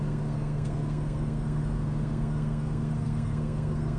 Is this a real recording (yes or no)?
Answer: no